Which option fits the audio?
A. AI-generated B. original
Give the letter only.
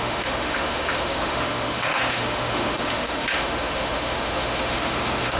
A